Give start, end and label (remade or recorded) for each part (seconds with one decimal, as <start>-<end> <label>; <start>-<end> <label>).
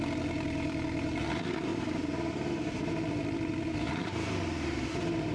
0.0-5.3 remade